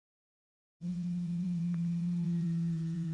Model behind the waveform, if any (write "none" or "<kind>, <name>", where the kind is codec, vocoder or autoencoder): vocoder, Vocos